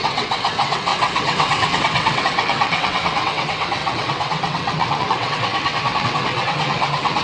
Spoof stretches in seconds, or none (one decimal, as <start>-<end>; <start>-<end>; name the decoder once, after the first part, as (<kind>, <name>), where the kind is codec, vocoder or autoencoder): 0.0-7.2 (vocoder, WaveNeXt)